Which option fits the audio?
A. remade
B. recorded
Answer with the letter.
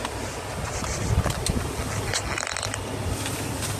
B